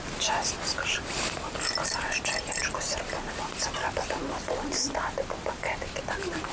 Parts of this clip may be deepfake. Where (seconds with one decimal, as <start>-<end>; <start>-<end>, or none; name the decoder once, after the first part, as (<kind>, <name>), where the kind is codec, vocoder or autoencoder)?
none